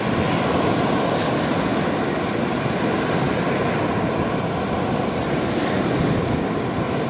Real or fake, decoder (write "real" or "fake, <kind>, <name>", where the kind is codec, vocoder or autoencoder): real